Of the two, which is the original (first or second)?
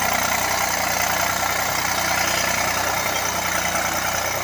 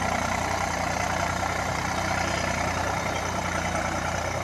first